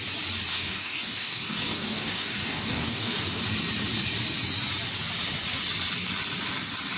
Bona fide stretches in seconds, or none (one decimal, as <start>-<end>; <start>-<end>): 0.0-0.5; 3.2-7.0